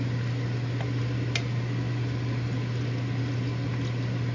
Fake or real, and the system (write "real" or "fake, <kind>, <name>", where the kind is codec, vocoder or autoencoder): real